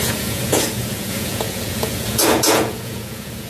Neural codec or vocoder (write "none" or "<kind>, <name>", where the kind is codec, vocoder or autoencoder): vocoder, Vocos